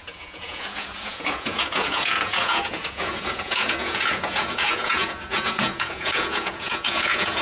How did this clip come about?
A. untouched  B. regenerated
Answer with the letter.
B